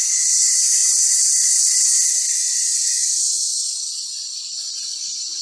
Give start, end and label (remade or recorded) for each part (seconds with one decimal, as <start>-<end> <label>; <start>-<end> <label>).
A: 0.0-2.4 recorded; 2.4-3.9 remade; 3.9-5.4 recorded